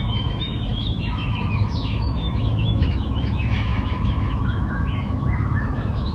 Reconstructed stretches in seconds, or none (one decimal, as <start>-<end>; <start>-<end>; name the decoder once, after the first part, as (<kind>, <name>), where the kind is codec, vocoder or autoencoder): 0.0-6.1 (autoencoder, DAC-VAE)